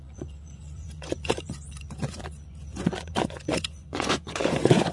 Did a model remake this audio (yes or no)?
yes